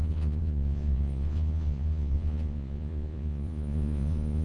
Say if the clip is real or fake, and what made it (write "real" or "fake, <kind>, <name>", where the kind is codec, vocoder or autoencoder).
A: fake, vocoder, Vocos